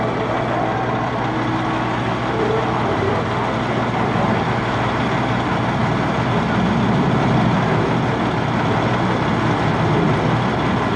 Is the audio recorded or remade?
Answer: recorded